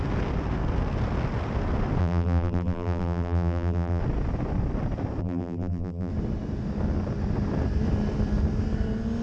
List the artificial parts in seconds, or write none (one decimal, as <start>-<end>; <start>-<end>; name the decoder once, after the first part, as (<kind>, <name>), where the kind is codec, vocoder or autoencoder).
2.0-4.0 (vocoder, BigVGAN v2); 5.2-6.1